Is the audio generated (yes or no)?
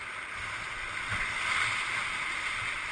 no